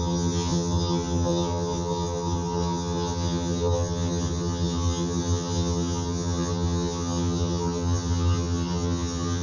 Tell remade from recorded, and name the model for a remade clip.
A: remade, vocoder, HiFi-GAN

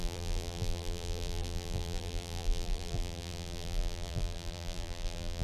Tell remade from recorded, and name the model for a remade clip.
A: remade, vocoder, BigVGAN v2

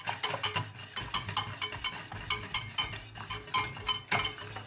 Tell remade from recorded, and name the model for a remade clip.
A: recorded